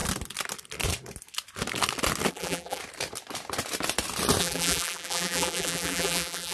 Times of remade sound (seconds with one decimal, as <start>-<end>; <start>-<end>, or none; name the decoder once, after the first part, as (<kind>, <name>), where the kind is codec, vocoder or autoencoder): 2.3-2.8 (vocoder, BigVGAN v2); 4.4-6.5

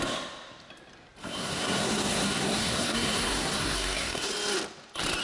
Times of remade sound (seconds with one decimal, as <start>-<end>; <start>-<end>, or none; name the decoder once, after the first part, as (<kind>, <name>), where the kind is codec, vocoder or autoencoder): 1.2-4.3 (codec, SNAC)

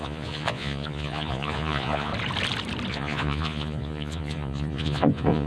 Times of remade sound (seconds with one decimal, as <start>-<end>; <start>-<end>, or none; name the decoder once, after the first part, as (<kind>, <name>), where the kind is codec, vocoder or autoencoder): 0.0-2.1 (vocoder, Vocos); 2.9-5.5

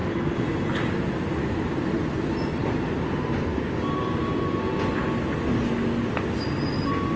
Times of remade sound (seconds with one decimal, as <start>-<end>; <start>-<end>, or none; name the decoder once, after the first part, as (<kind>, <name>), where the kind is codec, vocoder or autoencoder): 3.5-4.3 (codec, DAC)

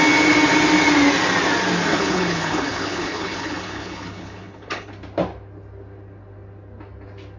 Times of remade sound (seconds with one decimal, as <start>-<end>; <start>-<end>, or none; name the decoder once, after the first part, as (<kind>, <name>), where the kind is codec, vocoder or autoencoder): 1.9-4.9 (codec, HILCodec)

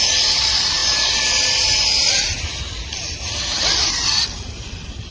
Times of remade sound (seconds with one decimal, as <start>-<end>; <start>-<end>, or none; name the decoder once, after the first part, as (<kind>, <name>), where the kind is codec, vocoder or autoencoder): none

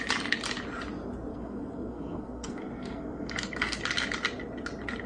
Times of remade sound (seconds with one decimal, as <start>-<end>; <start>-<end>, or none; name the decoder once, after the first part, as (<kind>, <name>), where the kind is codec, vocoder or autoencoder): 1.3-3.8 (codec, SNAC)

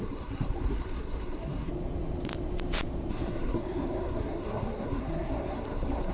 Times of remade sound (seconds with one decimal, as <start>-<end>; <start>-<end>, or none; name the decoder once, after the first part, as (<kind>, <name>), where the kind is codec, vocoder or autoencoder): 0.0-1.7 (codec, SNAC); 3.1-6.1